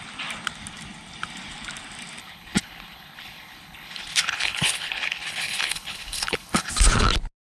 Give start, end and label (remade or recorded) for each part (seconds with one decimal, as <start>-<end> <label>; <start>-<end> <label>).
0.0-2.2 recorded; 2.2-6.7 remade; 6.7-7.6 recorded